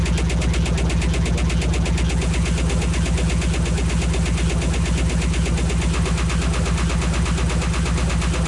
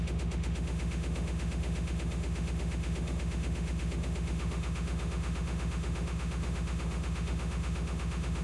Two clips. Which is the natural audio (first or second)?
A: first